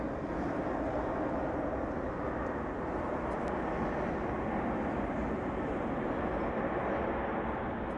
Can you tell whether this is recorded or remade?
recorded